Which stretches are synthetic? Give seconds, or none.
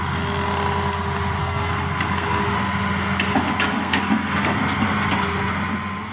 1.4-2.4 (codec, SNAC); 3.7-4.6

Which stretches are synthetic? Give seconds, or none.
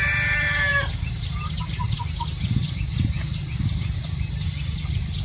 none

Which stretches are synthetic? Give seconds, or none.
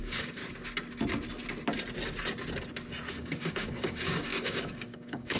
0.0-0.4 (codec, DAC); 3.1-5.4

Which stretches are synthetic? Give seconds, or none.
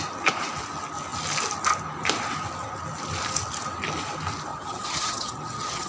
4.5-5.9 (vocoder, HiFi-GAN)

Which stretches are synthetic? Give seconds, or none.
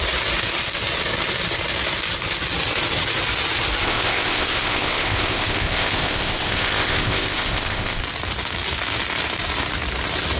3.8-8.0 (codec, ZipCodec)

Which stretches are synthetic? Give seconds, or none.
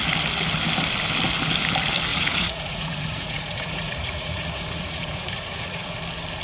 2.1-5.9 (vocoder, Vocos)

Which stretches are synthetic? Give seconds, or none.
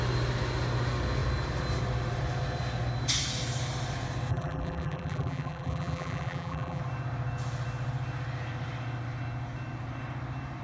4.3-6.8 (vocoder, BigVGAN v2)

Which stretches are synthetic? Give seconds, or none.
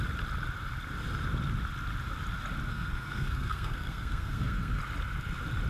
2.7-4.8 (codec, SNAC)